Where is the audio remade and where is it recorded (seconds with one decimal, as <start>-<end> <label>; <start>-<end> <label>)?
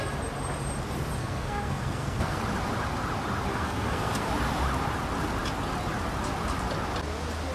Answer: 0.0-1.2 recorded; 1.2-2.4 remade; 2.4-3.5 recorded; 3.5-4.3 remade; 4.3-7.5 recorded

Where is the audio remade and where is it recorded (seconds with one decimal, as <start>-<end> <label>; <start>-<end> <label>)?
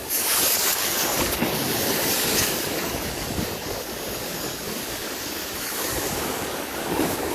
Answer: 0.0-7.3 remade